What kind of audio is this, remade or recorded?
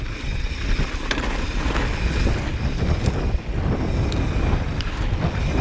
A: recorded